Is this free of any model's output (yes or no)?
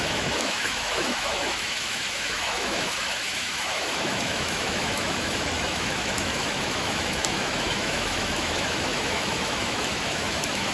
no